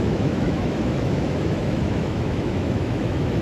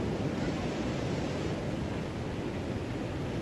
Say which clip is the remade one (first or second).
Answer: first